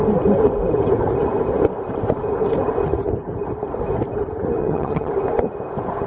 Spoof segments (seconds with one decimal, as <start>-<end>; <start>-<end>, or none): 4.6-5.1